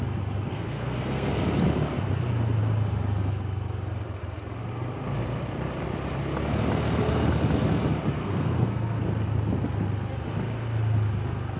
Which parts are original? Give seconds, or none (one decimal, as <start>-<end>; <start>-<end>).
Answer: 0.0-0.5; 1.3-8.2; 9.0-11.6